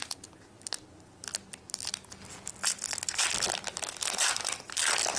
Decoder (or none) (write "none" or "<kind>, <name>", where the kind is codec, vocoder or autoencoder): none